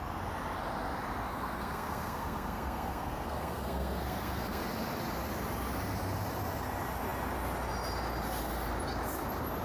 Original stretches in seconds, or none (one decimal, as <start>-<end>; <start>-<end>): 0.0-1.3; 4.6-9.6